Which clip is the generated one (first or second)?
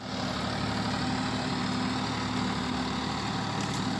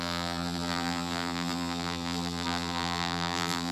second